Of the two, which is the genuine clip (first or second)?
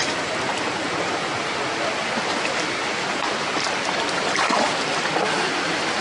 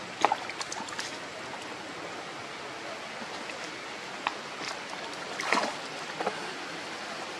second